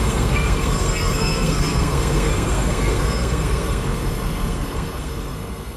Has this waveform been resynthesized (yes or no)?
yes